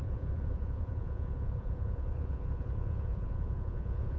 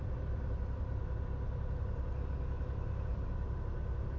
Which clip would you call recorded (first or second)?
second